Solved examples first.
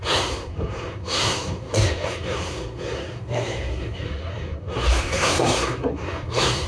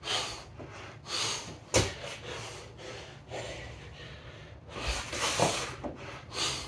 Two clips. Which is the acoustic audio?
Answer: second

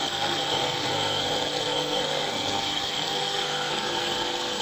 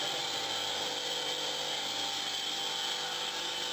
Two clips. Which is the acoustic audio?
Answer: second